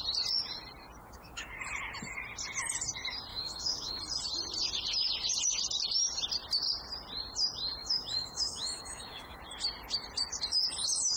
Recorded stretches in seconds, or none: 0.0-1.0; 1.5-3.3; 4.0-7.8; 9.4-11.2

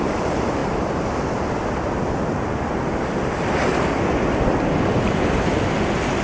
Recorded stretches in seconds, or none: 0.0-6.2

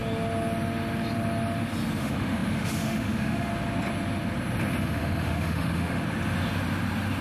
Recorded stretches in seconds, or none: 0.0-2.0; 3.5-4.8; 6.0-7.2

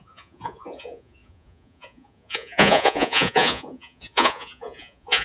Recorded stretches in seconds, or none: none

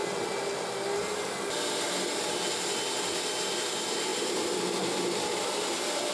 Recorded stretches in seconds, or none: 0.0-4.1